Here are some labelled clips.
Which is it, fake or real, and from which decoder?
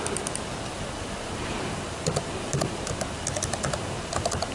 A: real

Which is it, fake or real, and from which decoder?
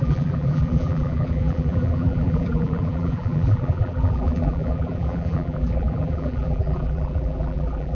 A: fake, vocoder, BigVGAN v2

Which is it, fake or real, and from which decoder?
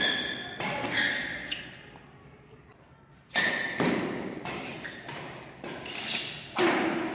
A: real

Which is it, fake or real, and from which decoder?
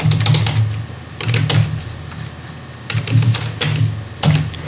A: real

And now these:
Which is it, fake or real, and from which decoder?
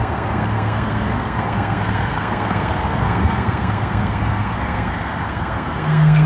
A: fake, codec, SNAC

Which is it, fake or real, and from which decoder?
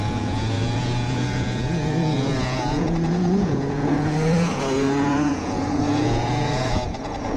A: fake, vocoder, Vocos